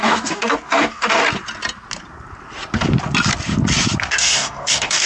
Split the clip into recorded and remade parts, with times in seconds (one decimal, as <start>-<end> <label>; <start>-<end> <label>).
0.0-1.2 remade; 1.2-4.1 recorded; 4.1-5.1 remade